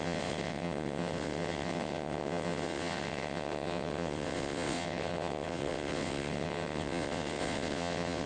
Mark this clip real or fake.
fake